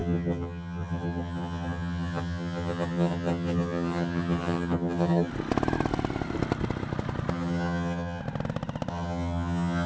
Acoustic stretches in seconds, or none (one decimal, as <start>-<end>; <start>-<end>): 5.3-7.3; 8.2-8.9